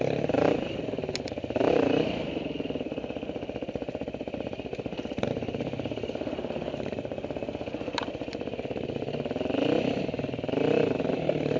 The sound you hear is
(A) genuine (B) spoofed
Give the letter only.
A